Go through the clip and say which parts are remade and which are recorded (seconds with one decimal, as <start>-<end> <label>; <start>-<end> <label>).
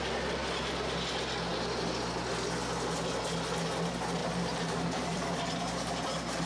0.0-4.2 recorded; 4.2-5.9 remade; 5.9-6.5 recorded